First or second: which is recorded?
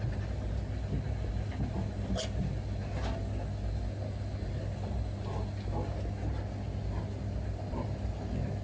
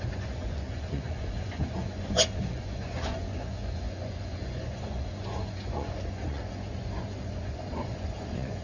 first